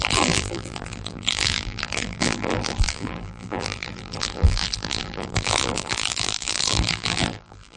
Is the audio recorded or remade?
remade